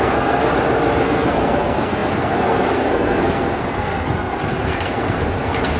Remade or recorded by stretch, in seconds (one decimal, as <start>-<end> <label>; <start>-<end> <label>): 0.0-0.5 remade; 0.5-1.0 recorded; 1.0-5.8 remade